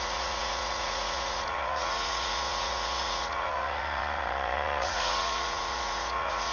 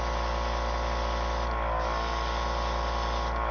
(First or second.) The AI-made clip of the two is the first